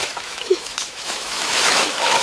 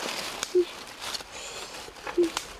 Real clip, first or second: second